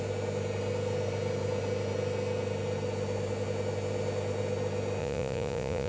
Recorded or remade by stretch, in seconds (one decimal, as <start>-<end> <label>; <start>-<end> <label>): 0.0-5.0 recorded; 5.0-5.9 remade